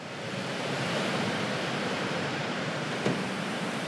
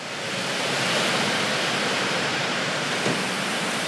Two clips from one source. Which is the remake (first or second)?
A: first